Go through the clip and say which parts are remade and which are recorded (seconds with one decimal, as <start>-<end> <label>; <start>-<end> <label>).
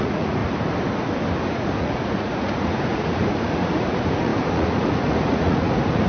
0.0-0.4 remade; 0.4-1.4 recorded; 1.4-6.1 remade